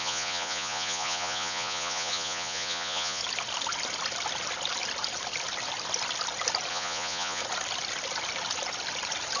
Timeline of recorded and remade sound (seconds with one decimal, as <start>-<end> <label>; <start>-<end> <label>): 0.0-3.2 remade; 3.2-6.7 recorded; 6.7-7.4 remade; 7.4-9.4 recorded